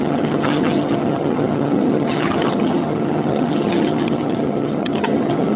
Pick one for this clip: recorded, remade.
remade